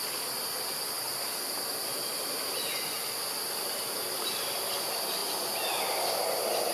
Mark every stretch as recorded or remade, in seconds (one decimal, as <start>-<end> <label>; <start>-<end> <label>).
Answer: 0.0-6.7 recorded